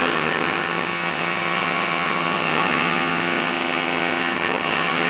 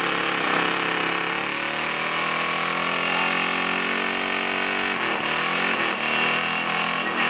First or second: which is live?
second